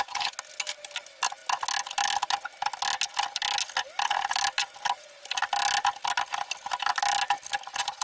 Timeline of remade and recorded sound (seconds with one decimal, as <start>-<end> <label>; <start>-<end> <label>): 0.0-8.0 recorded